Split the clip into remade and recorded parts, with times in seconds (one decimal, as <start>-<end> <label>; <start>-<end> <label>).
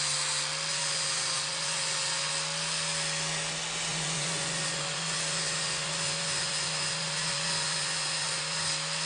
0.0-0.7 recorded; 0.7-2.3 remade; 2.3-3.9 recorded; 3.9-8.7 remade; 8.7-9.1 recorded